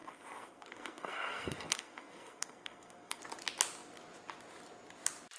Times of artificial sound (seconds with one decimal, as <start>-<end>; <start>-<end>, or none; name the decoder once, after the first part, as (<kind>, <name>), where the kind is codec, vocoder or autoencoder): 0.0-3.2 (codec, SNAC)